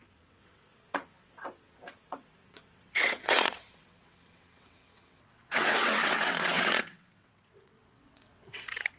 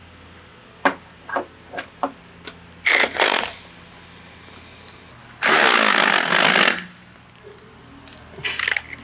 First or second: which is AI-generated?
first